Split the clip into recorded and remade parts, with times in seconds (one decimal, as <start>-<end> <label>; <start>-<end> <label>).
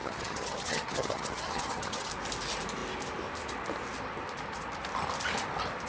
0.0-2.1 remade; 2.1-5.9 recorded